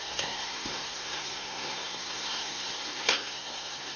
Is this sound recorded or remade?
remade